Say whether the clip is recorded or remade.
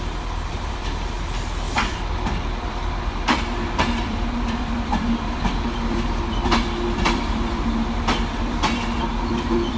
remade